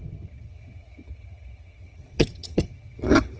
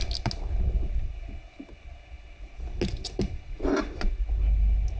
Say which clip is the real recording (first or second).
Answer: second